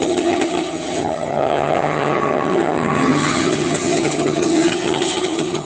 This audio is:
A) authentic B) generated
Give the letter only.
B